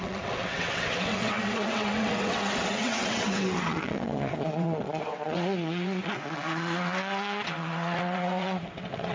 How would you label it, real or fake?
fake